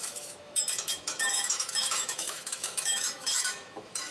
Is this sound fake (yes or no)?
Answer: yes